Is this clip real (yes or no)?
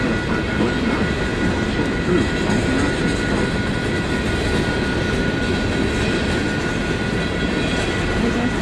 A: yes